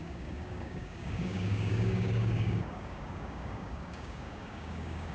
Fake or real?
fake